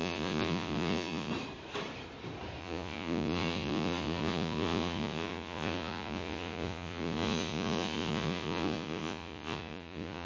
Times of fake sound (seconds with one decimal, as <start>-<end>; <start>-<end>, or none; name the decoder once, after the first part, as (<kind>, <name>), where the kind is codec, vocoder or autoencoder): 0.0-1.3 (vocoder, Vocos); 2.6-10.2